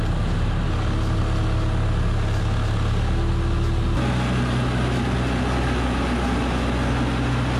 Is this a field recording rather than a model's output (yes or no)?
yes